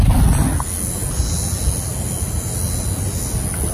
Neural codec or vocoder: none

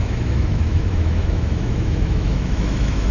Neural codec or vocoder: autoencoder, DAC-VAE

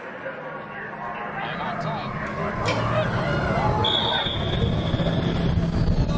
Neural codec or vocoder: none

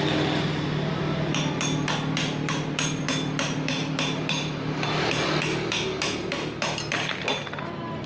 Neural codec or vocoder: none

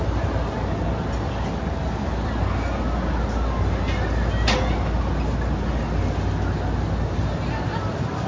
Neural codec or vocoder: none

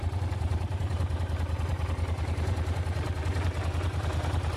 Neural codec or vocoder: vocoder, BigVGAN v2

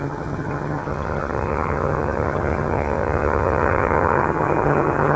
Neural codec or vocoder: vocoder, HiFi-GAN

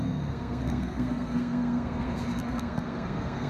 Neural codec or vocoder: codec, SNAC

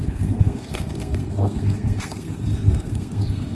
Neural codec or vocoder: codec, SNAC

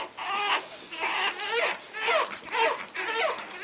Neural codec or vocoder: none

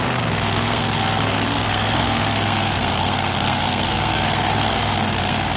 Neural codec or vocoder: codec, SNAC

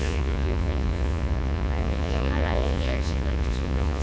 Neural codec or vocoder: vocoder, Vocos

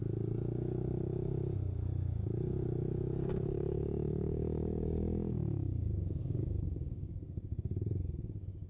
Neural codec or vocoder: codec, DAC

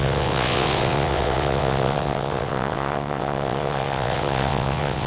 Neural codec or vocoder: vocoder, WaveNeXt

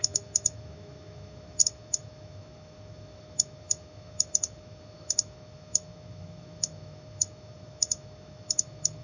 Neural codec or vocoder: autoencoder, DAC-VAE